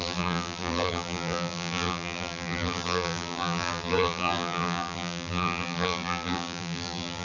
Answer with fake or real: fake